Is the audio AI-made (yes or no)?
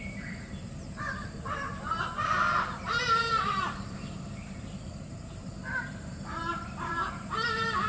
yes